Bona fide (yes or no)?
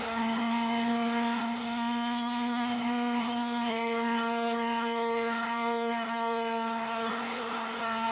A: no